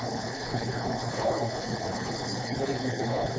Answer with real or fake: fake